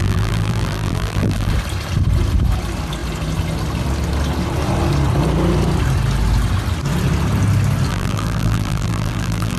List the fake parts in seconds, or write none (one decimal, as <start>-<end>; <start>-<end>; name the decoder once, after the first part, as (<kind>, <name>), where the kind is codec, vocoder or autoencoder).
0.0-1.5 (vocoder, BigVGAN v2); 7.9-9.6